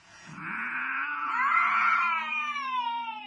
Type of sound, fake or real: fake